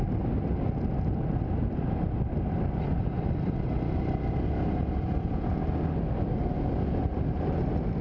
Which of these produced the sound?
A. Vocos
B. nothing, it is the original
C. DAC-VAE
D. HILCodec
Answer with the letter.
B